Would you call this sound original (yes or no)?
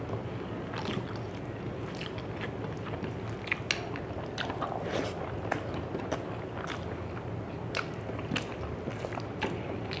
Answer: yes